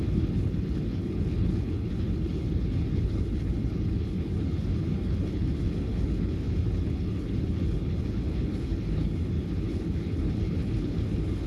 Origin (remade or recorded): remade